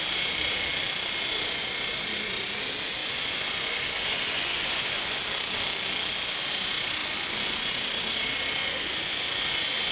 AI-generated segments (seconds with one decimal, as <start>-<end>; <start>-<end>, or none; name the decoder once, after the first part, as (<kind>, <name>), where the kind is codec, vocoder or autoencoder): 3.0-5.2 (vocoder, Vocos); 7.0-7.7; 8.6-9.9